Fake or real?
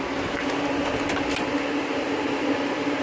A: real